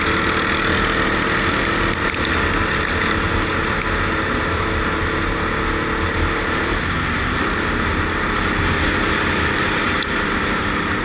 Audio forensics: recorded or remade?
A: recorded